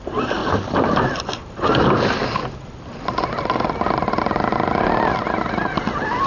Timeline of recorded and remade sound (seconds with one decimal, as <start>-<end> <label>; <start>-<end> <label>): 0.0-6.3 recorded